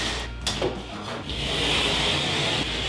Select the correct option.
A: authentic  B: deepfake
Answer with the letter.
A